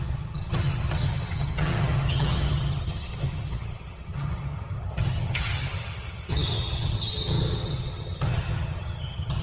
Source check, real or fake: fake